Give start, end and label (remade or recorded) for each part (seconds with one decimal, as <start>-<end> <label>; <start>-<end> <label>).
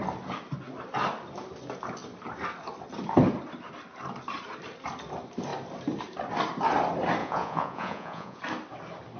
0.0-7.2 recorded; 7.2-8.4 remade; 8.4-9.2 recorded